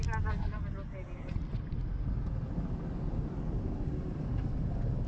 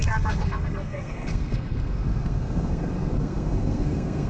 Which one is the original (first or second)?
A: first